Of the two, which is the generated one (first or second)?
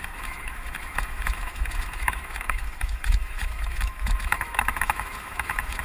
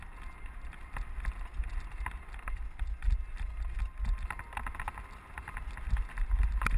first